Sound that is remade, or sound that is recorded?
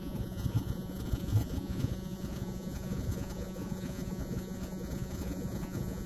remade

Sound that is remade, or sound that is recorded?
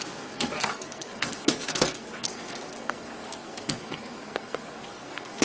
remade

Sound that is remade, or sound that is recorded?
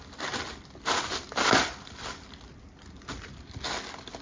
recorded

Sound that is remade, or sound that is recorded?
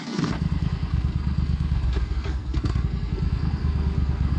remade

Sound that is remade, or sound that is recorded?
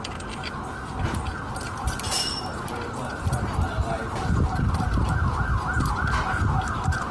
recorded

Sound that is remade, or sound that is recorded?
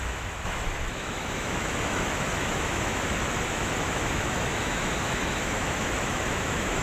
remade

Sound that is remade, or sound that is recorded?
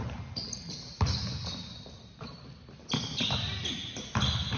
recorded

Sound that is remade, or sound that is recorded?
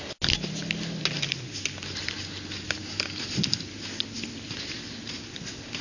recorded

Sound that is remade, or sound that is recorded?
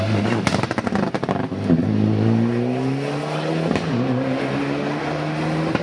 recorded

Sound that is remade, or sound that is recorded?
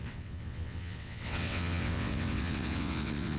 remade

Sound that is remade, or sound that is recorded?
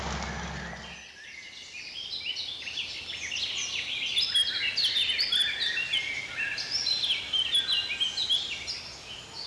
recorded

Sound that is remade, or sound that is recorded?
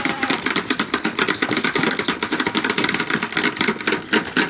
recorded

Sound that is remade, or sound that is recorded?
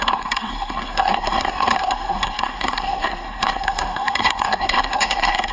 remade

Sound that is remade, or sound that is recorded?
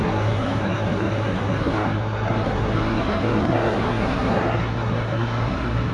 remade